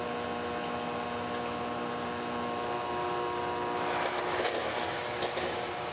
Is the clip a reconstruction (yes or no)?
no